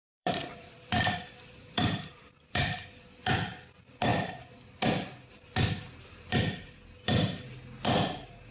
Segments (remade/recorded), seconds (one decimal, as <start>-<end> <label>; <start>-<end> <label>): 0.0-3.0 remade; 3.0-8.5 recorded